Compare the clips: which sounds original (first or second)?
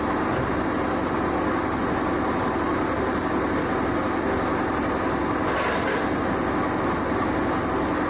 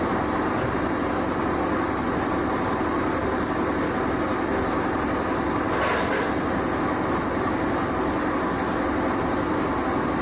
first